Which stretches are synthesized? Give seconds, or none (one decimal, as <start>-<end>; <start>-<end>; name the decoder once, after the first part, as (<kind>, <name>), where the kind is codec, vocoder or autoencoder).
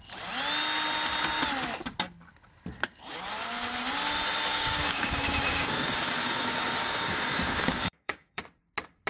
4.5-8.4 (codec, DAC)